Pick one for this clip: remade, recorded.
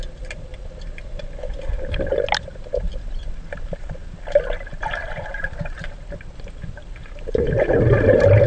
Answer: recorded